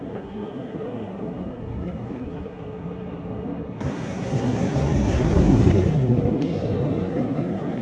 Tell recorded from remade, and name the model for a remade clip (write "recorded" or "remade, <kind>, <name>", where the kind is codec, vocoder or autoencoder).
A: remade, codec, SNAC